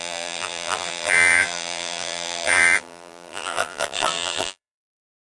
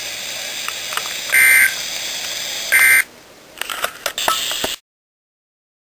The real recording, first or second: second